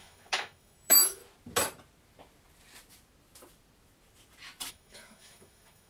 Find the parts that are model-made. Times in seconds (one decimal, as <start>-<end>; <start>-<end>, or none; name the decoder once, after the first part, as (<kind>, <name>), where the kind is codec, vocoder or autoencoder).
0.0-1.2 (autoencoder, DAC-VAE); 4.7-5.9